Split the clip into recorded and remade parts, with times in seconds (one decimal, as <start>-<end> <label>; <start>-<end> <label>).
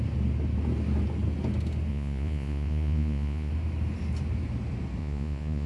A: 0.0-1.9 recorded; 1.9-3.5 remade; 3.5-5.0 recorded; 5.0-5.7 remade